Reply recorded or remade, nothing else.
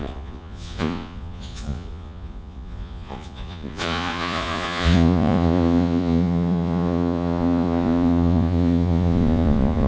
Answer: remade